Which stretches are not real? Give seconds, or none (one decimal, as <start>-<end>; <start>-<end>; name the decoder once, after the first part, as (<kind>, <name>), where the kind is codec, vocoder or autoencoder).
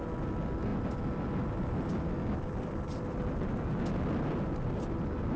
none